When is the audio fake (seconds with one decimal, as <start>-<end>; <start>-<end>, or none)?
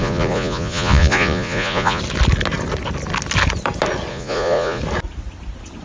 0.0-2.0; 4.1-4.8